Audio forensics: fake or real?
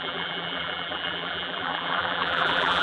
fake